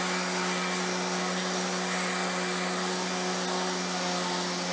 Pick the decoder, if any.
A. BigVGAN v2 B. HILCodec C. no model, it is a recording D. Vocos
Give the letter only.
C